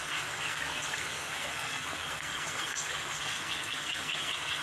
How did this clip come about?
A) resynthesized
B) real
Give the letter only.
A